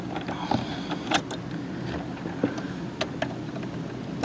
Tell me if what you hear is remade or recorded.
recorded